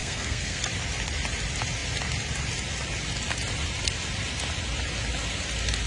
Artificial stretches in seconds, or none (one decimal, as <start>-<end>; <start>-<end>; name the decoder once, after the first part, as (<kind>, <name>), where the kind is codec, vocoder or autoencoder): 0.0-0.6 (codec, SNAC)